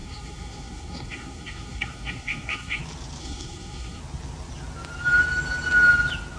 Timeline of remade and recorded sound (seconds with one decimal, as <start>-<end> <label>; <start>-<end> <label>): 0.0-2.8 remade; 2.8-3.2 recorded; 3.2-4.0 remade; 4.0-6.4 recorded